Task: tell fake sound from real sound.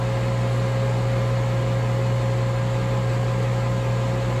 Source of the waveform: real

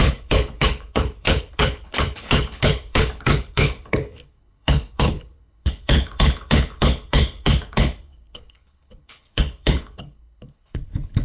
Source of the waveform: fake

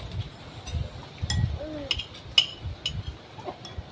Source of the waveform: real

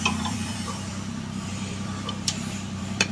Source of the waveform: fake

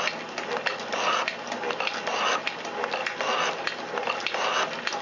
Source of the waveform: real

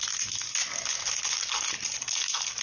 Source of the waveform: real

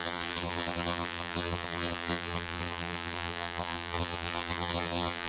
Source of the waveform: fake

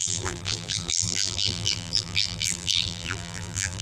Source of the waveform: fake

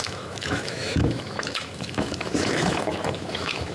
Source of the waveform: fake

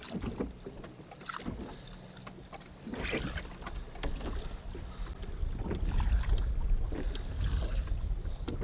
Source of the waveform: real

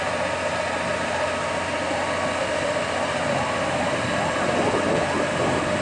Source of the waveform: real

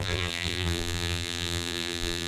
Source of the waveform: fake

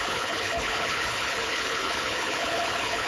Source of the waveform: fake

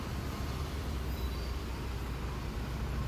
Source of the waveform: real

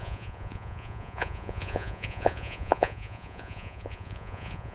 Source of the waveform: fake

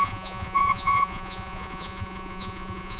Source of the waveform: fake